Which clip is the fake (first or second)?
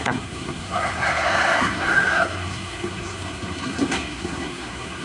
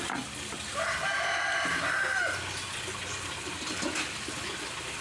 first